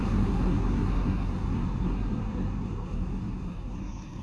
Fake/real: fake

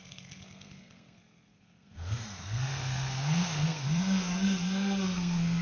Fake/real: fake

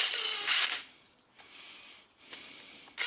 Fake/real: real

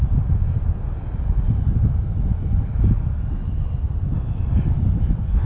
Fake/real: real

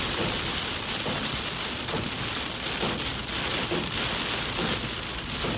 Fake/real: real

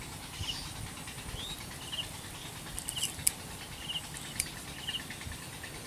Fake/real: real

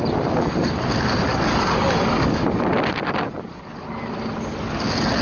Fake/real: real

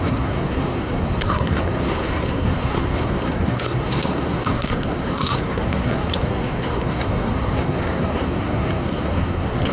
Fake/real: fake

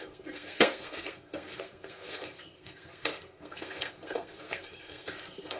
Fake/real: fake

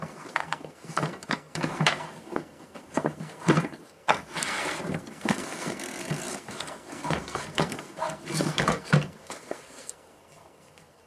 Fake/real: fake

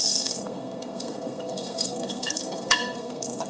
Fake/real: fake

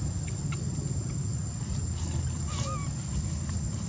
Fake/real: real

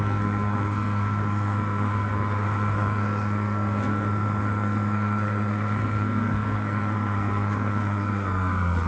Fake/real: fake